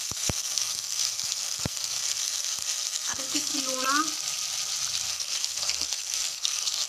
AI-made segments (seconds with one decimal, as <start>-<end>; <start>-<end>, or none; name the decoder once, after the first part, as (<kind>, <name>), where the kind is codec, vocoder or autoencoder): 0.0-3.5 (codec, SNAC); 5.1-6.9

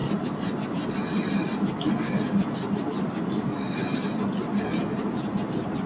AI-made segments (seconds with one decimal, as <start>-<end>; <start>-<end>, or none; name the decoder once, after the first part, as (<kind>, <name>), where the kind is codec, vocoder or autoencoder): none